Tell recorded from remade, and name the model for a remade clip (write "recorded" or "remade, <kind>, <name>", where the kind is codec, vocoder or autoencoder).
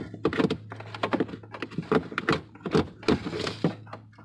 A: recorded